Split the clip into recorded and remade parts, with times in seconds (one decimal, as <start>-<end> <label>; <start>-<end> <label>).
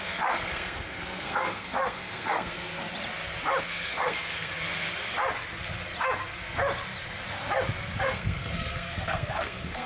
0.0-2.7 remade; 2.7-3.6 recorded; 3.6-4.5 remade; 4.5-8.0 recorded; 8.0-9.9 remade